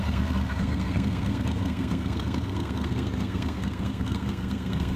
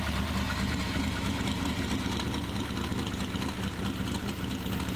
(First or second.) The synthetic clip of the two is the first